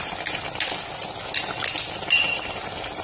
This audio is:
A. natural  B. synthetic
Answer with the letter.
A